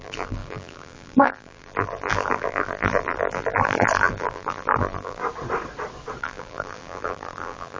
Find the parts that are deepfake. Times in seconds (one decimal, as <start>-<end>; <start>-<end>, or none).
0.0-5.2; 6.2-7.8